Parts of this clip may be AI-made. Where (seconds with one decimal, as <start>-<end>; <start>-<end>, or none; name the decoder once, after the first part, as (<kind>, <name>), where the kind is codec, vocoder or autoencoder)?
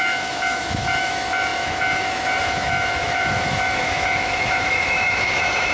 0.0-5.7 (autoencoder, DAC-VAE)